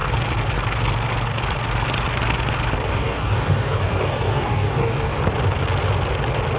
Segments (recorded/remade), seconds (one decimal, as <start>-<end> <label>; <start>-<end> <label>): 0.0-2.9 recorded; 2.9-5.2 remade; 5.2-6.6 recorded